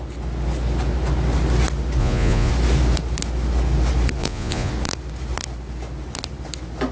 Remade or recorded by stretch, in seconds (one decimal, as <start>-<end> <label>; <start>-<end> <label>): 0.0-2.0 recorded; 2.0-2.5 remade; 2.5-4.2 recorded; 4.2-4.7 remade; 4.7-6.9 recorded